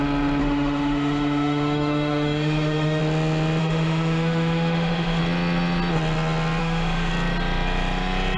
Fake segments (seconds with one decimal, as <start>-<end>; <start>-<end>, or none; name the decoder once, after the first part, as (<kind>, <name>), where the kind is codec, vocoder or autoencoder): 0.4-3.0 (autoencoder, DAC-VAE); 3.6-5.2; 6.6-7.1